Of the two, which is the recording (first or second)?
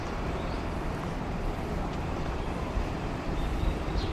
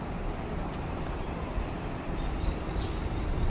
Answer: second